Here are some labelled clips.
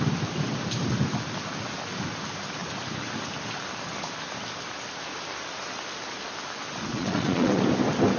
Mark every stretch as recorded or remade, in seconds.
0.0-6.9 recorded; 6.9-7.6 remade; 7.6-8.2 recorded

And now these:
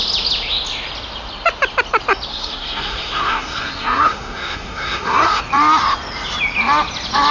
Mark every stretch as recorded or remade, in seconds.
0.0-2.3 recorded; 2.3-5.4 remade; 5.4-7.3 recorded

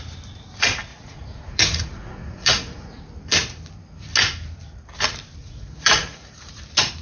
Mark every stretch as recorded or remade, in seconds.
0.0-0.9 recorded; 0.9-3.0 remade; 3.0-5.4 recorded; 5.4-6.6 remade; 6.6-7.0 recorded

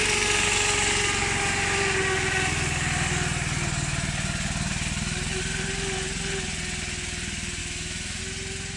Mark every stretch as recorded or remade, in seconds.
0.0-7.6 recorded; 7.6-8.2 remade; 8.2-8.8 recorded